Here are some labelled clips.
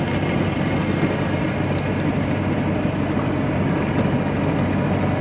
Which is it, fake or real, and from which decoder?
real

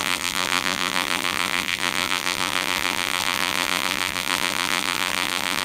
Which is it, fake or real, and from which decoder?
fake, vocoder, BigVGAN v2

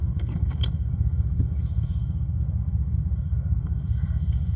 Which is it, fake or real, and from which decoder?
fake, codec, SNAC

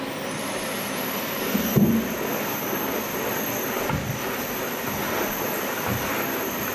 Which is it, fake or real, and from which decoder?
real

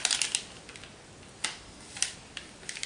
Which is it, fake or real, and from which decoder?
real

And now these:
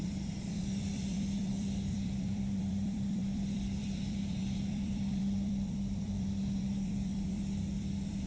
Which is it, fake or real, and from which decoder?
fake, vocoder, BigVGAN v2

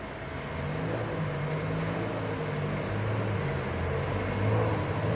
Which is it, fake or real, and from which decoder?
real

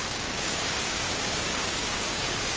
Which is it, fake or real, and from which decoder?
fake, codec, DAC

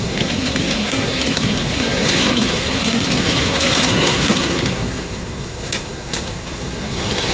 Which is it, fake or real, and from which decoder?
fake, codec, SNAC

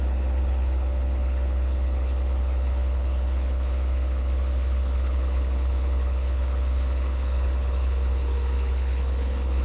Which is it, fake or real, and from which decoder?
fake, codec, HILCodec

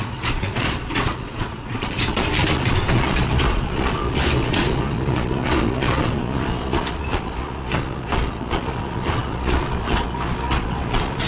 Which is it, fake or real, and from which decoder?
fake, vocoder, Vocos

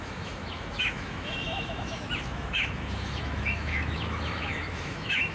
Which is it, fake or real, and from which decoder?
fake, autoencoder, DAC-VAE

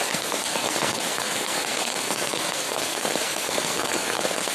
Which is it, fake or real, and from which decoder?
fake, codec, SNAC